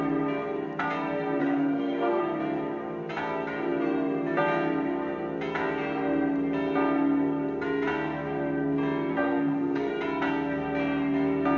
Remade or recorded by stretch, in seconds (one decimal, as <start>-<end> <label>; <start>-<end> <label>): 0.0-1.4 recorded; 1.4-2.2 remade; 2.2-9.1 recorded; 9.1-9.9 remade; 9.9-11.6 recorded